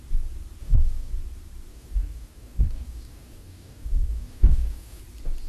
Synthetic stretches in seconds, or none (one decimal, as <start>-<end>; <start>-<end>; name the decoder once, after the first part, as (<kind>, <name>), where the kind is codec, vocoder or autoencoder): 0.6-1.1 (codec, DAC); 1.7-5.0